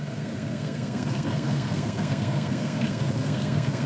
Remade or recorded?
remade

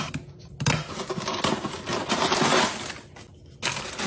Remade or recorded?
recorded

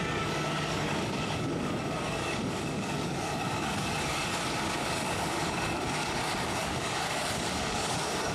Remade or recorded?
remade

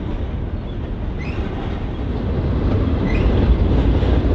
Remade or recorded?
recorded